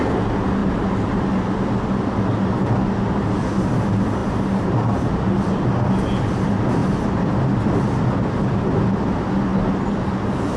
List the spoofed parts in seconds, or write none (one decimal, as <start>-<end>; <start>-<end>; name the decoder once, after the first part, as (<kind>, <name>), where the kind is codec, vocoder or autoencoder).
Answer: 0.6-1.3 (vocoder, BigVGAN v2); 4.2-5.1; 6.8-7.3